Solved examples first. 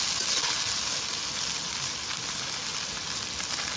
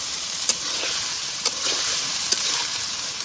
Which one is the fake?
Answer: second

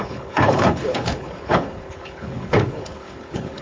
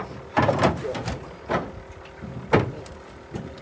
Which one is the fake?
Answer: first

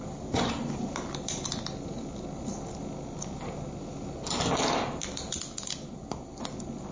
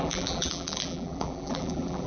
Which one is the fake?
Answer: second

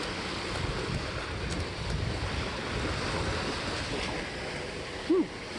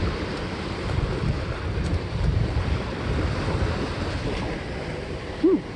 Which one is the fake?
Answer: second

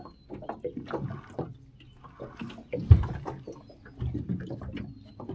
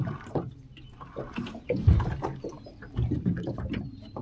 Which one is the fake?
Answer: second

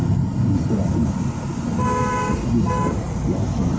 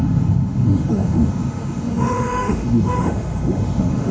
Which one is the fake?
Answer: second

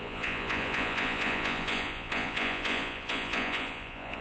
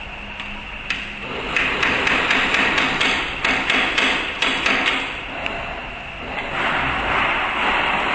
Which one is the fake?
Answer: first